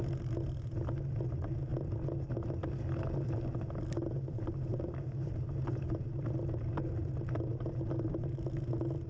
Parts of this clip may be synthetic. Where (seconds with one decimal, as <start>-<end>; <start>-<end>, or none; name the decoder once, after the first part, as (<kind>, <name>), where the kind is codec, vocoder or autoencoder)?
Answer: none